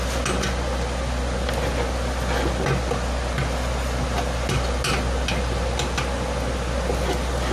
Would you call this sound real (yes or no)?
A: yes